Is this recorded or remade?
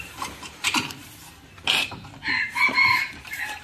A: remade